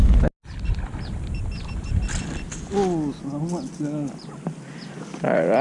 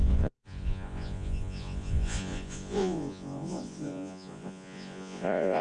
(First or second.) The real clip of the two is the first